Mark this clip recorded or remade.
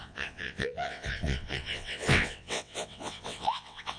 remade